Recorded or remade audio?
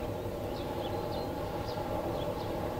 recorded